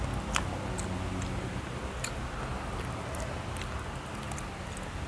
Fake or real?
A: real